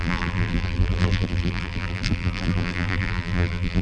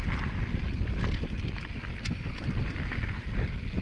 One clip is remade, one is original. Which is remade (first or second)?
first